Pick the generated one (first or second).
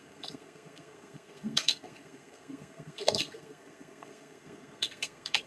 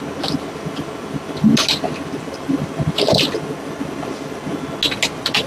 first